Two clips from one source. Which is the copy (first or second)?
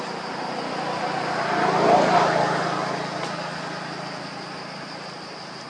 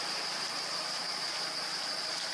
second